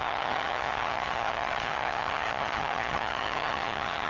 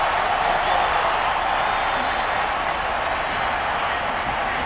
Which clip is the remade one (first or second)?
first